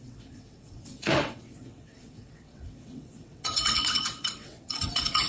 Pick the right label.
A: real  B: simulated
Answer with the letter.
B